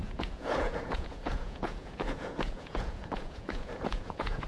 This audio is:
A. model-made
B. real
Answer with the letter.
A